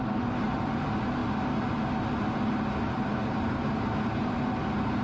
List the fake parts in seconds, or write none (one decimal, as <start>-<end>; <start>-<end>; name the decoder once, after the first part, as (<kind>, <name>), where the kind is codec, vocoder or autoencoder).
none